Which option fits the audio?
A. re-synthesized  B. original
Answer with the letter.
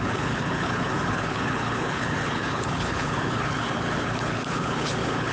A